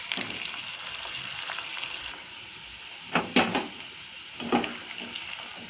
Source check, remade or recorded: recorded